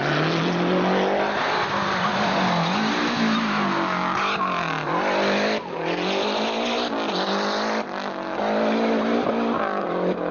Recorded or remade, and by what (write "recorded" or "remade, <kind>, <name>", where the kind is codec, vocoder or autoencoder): recorded